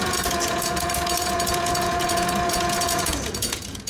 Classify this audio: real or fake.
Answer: fake